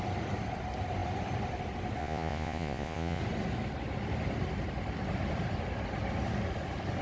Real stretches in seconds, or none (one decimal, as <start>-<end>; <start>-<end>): 0.0-2.0; 3.2-7.0